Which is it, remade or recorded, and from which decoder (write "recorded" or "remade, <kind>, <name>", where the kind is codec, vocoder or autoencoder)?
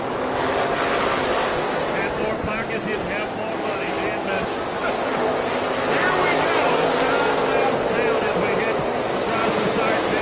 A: recorded